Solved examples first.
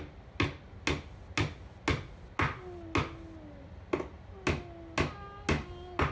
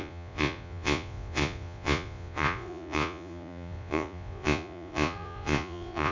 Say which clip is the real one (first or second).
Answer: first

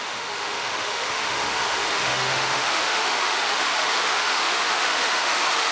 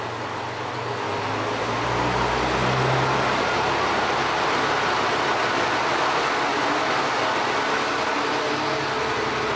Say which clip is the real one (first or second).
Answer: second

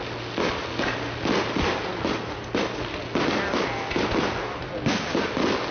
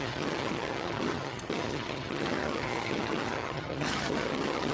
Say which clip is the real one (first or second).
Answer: first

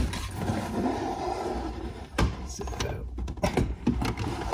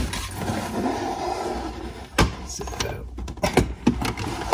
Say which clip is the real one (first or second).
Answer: second